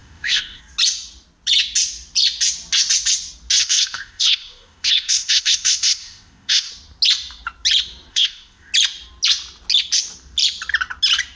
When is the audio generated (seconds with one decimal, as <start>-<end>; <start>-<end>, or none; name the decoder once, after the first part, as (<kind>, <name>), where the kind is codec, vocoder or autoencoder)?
0.0-0.6 (codec, ZipCodec); 3.6-6.7; 8.1-8.7